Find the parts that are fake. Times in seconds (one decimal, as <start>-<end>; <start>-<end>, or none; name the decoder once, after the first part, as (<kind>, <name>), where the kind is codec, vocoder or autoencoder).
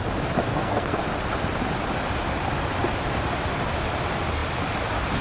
0.5-1.0 (codec, SNAC)